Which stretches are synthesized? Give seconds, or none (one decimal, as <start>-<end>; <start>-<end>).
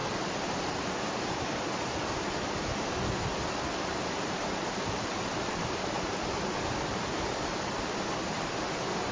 0.0-0.9; 3.9-8.6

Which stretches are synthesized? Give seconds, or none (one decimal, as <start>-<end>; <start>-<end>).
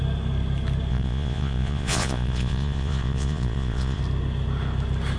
0.9-4.0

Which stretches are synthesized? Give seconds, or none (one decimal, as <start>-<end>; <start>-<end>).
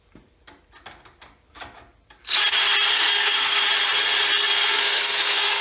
2.9-3.6; 4.4-5.6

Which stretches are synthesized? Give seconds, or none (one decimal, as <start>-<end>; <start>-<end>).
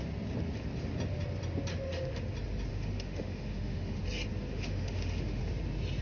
1.7-2.2; 2.7-4.0; 4.5-5.4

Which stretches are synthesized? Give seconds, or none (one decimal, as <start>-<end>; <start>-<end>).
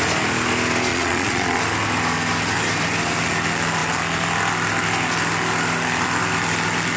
0.9-1.6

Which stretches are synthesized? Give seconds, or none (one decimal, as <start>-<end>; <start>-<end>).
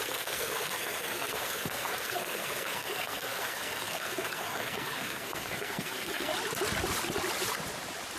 0.0-6.3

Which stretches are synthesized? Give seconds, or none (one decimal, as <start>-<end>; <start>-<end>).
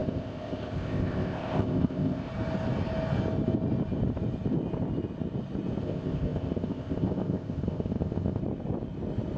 0.0-2.3; 5.8-8.4